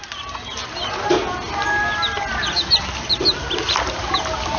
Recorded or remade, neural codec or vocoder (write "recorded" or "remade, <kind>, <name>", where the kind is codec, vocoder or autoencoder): recorded